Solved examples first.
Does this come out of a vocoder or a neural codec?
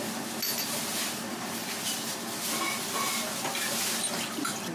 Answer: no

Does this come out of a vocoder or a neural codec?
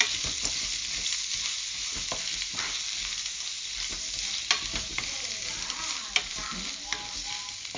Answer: no